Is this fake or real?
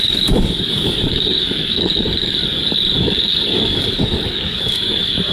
fake